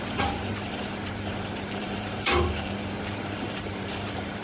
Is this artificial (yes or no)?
yes